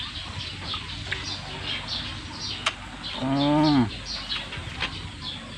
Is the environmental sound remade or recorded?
recorded